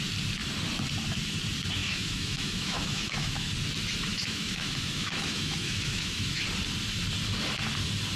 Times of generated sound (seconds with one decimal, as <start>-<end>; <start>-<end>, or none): 1.8-3.5; 4.1-6.4